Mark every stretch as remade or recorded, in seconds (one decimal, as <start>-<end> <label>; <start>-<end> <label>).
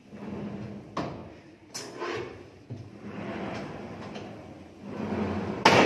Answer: 0.0-1.2 recorded; 1.2-4.3 remade; 4.3-5.9 recorded